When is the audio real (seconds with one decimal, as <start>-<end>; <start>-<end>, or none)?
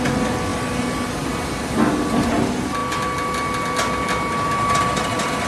0.0-5.5